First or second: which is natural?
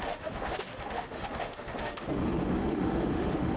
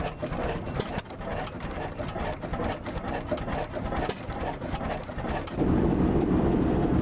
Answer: second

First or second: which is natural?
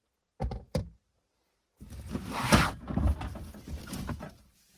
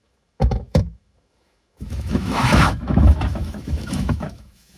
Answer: first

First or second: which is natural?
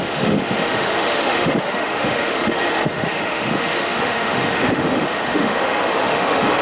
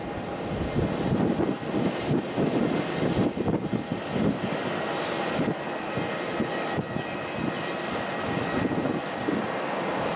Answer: second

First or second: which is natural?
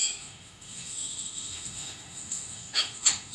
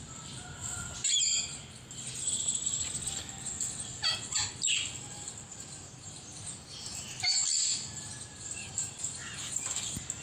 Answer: second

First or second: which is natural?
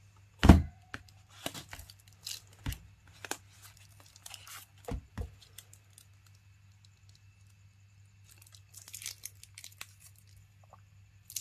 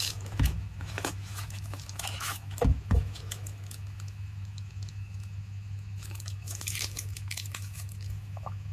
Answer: first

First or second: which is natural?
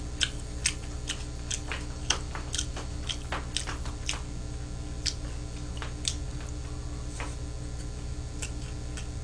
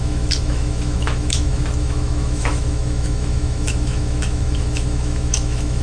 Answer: first